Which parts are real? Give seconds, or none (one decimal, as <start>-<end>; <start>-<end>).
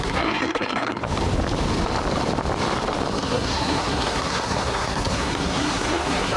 1.0-3.1